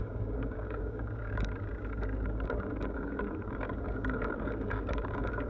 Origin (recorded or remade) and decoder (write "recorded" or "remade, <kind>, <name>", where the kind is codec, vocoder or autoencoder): remade, codec, DAC